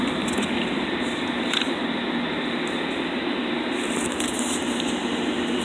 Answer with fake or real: real